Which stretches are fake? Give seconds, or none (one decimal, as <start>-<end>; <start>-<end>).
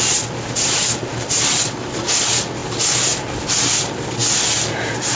none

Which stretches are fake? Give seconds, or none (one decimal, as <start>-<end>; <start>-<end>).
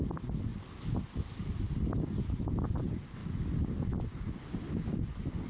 none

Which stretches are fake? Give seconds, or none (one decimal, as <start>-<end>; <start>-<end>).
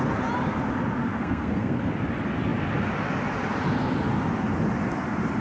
1.0-1.9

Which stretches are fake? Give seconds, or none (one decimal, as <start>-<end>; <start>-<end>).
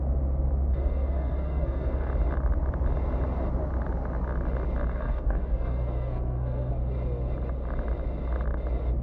0.7-2.1; 4.9-6.7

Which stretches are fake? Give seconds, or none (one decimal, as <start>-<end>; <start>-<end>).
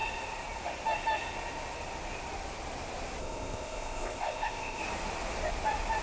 3.2-4.8